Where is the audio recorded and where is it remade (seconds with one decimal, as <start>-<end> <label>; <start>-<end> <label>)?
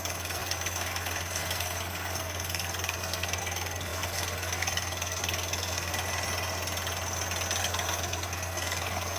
0.0-5.9 remade; 5.9-7.6 recorded; 7.6-9.2 remade